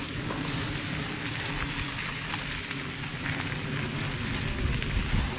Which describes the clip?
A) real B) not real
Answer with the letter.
A